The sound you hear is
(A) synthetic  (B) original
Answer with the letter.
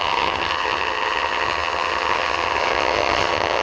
A